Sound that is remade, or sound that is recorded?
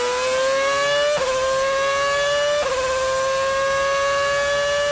recorded